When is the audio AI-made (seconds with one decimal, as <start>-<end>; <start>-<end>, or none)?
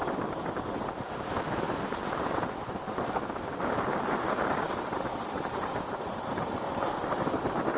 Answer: 0.0-7.8